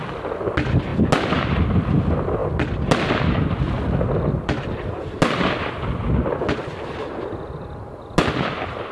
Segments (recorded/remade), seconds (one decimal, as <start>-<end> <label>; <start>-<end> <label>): 0.0-8.9 recorded